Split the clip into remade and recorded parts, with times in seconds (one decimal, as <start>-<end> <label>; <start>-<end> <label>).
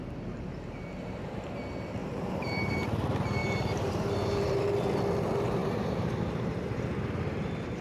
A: 0.0-2.0 recorded; 2.0-2.7 remade; 2.7-3.4 recorded; 3.4-3.9 remade; 3.9-5.6 recorded; 5.6-6.8 remade; 6.8-7.8 recorded